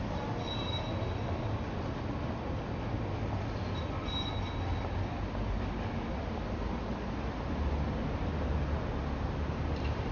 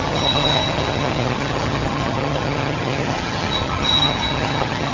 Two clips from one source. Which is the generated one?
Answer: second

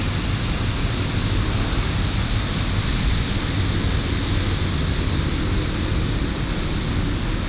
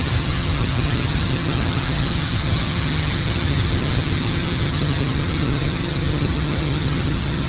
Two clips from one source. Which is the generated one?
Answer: second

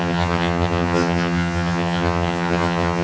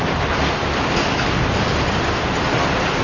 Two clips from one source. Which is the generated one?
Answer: first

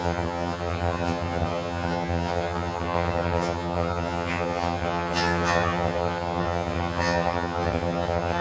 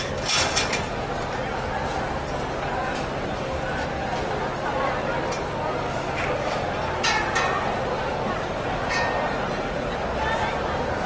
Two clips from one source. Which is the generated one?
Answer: first